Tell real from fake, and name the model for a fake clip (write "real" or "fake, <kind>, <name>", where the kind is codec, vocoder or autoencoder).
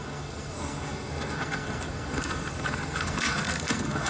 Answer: fake, codec, SNAC